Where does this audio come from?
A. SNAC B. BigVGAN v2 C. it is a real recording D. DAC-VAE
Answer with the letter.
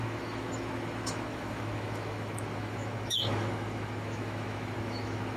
D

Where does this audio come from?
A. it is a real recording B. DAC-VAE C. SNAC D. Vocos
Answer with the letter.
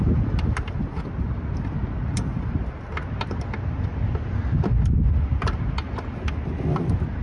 A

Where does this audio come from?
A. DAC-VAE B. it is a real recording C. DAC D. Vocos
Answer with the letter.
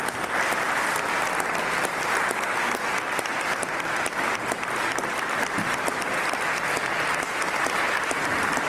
B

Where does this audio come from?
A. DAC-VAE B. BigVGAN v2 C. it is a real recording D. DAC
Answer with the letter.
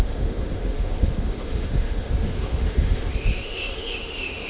A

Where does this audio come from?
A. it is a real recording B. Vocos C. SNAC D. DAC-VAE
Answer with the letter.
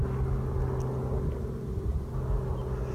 A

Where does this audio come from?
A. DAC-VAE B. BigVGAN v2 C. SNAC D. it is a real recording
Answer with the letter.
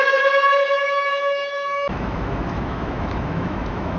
A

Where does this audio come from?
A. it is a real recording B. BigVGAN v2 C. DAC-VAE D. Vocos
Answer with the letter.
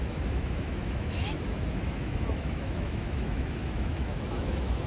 C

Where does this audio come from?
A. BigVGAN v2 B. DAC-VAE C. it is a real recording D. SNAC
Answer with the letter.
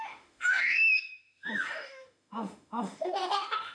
B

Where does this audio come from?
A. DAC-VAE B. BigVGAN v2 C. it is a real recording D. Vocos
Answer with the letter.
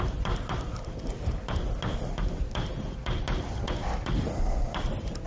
C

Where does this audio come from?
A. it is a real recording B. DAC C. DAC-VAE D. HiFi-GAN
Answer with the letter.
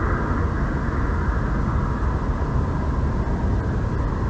A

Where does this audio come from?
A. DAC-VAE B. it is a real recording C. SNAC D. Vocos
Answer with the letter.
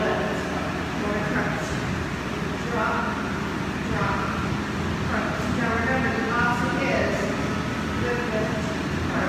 B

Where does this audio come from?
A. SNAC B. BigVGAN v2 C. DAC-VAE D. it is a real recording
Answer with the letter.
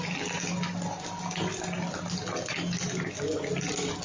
D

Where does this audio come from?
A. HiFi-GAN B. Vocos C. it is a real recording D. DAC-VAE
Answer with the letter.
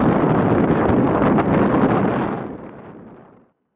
C